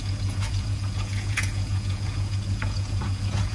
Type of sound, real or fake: fake